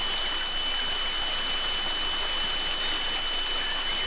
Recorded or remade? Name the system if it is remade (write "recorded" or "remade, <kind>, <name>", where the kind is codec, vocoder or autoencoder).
recorded